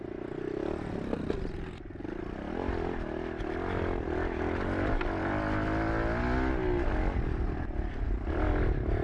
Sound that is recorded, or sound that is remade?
recorded